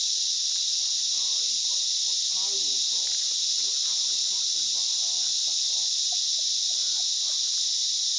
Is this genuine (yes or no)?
yes